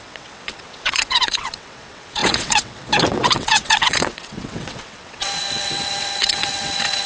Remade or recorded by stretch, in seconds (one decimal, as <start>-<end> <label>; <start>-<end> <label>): 0.0-7.1 remade